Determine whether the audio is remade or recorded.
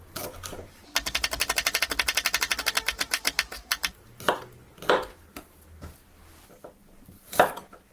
remade